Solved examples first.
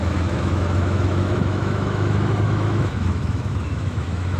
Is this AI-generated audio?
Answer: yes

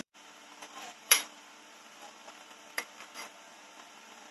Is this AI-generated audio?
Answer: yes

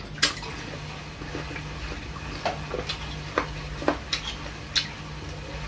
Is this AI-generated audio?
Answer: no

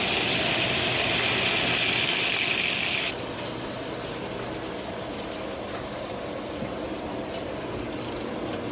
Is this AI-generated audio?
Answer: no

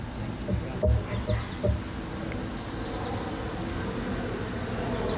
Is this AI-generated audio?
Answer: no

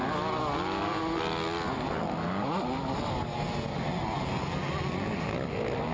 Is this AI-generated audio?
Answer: no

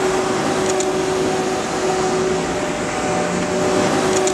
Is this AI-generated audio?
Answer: no